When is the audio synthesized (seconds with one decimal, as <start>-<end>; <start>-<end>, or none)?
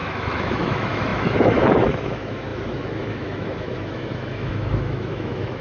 0.0-5.6